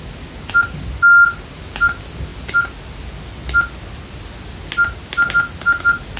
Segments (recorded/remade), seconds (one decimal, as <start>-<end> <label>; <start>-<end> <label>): 0.0-6.2 recorded